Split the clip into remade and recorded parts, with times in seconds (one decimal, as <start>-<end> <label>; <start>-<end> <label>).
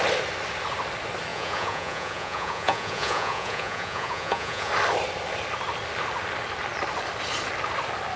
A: 0.0-1.3 recorded; 1.3-4.7 remade; 4.7-8.2 recorded